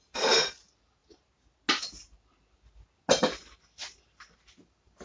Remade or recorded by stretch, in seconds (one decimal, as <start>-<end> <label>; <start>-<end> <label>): 0.0-5.0 recorded